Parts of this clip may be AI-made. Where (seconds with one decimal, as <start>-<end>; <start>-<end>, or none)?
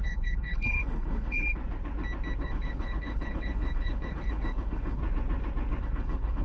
0.0-1.6; 2.4-5.0; 5.8-6.4